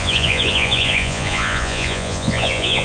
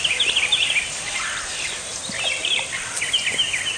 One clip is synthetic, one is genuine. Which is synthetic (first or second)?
first